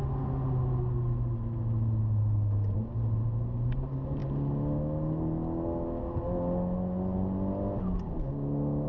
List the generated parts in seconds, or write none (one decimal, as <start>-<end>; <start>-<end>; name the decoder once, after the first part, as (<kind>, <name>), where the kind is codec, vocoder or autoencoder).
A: none